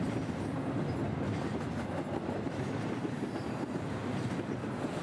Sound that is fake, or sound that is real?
real